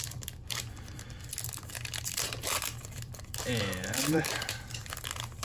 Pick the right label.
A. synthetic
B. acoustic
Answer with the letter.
A